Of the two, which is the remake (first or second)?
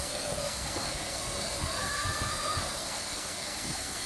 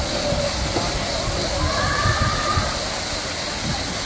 first